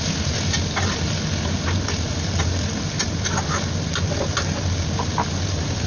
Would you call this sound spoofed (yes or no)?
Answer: no